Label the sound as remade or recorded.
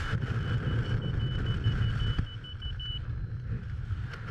recorded